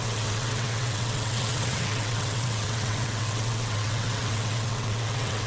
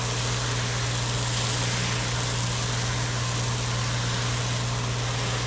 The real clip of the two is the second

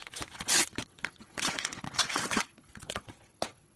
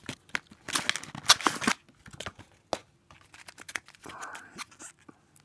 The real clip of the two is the second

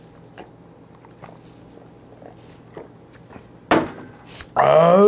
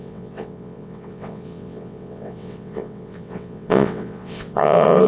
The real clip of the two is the first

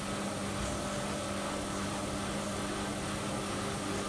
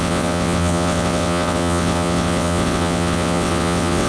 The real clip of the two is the first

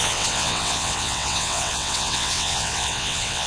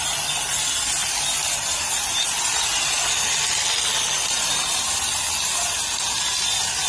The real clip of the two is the second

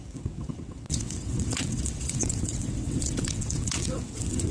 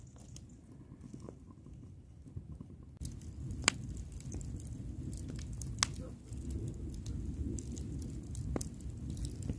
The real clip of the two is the second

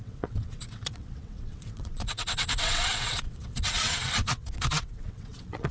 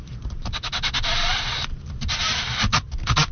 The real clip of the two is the second